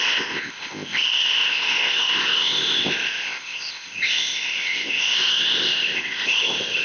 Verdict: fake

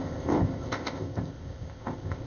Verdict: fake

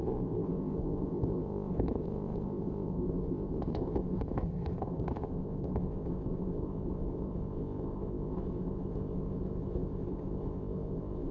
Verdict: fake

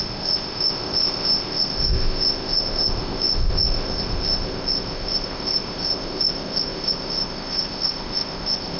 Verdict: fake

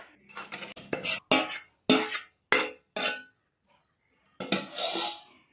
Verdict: real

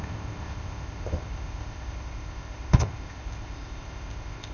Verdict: fake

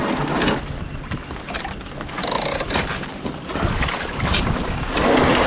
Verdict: real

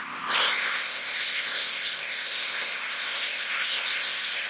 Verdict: fake